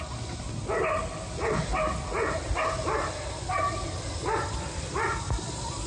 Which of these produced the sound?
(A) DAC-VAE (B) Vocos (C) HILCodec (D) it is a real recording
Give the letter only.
D